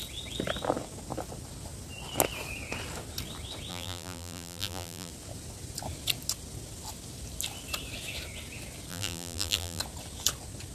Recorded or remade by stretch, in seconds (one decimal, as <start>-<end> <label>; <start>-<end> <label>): 0.0-3.7 recorded; 3.7-5.1 remade; 5.1-8.9 recorded; 8.9-9.8 remade; 9.8-10.7 recorded